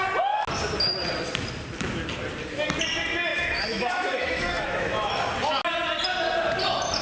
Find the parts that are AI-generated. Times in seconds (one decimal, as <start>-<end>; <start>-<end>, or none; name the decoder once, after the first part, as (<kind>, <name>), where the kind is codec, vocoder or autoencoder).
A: 3.3-5.1 (autoencoder, DAC-VAE)